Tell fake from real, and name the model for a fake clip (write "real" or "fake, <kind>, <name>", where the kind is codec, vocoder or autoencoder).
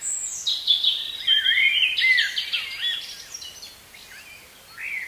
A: real